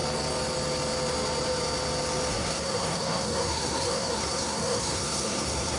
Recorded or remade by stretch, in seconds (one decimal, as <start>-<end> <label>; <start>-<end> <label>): 0.0-2.3 recorded; 2.3-5.8 remade